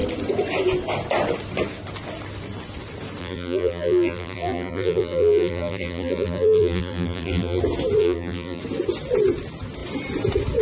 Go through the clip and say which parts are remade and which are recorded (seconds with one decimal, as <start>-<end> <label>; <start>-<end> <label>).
0.0-3.2 recorded; 3.2-7.6 remade; 7.6-8.0 recorded; 8.0-8.6 remade; 8.6-10.6 recorded